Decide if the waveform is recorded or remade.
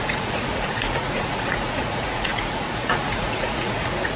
remade